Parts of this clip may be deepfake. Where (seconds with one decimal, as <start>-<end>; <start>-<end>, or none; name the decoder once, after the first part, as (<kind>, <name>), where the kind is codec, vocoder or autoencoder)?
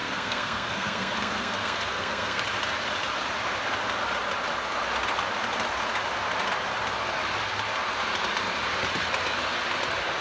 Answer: 0.0-2.4 (codec, SNAC)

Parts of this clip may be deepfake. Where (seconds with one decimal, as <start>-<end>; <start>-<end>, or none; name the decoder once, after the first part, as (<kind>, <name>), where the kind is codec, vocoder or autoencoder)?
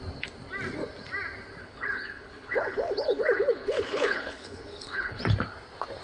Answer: 1.6-5.2 (codec, HILCodec)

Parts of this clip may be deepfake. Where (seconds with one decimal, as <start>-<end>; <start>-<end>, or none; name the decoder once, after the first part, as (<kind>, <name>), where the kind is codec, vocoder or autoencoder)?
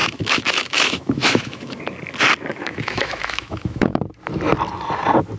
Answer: 0.0-1.8 (autoencoder, DAC-VAE); 2.5-4.0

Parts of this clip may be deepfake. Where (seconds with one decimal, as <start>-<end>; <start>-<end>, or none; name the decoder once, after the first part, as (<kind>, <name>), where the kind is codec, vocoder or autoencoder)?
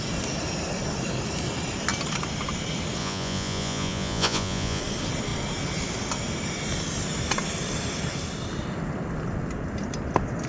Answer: 3.0-4.8 (vocoder, Vocos)